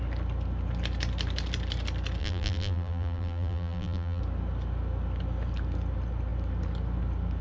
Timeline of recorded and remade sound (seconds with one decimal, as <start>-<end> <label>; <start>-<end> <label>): 0.0-2.2 recorded; 2.2-4.2 remade; 4.2-7.4 recorded